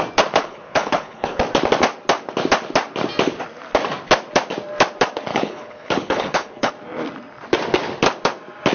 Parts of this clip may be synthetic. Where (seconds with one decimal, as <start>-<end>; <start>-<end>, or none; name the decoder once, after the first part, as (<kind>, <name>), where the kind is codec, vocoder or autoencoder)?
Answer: 0.4-1.4 (codec, HILCodec); 5.3-6.7